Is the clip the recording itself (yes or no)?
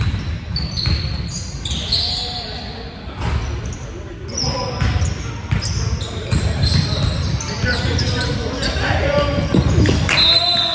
yes